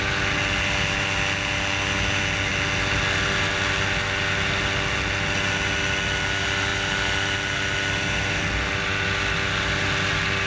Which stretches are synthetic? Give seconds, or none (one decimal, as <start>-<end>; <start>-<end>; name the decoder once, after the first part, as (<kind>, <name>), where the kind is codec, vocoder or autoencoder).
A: none